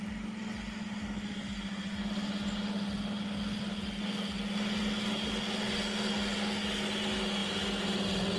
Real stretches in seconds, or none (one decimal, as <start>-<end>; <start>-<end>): 0.0-8.4